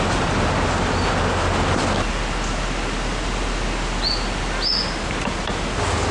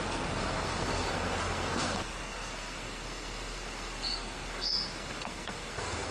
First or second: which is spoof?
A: second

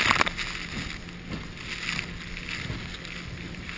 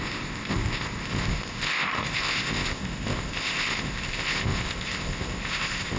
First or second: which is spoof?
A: second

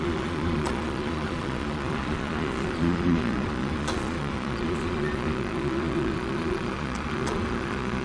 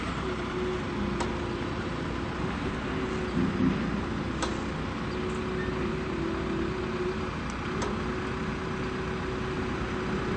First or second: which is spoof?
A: first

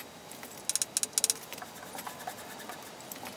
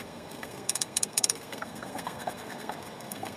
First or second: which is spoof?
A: second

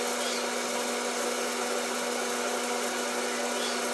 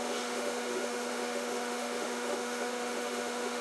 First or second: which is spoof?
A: second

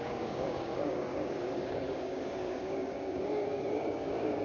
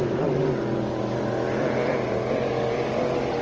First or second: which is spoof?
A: first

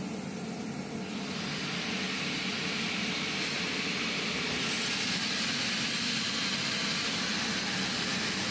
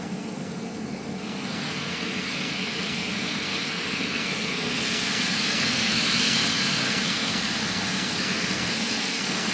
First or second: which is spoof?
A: second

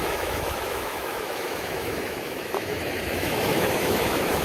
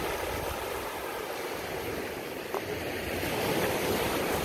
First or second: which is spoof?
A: first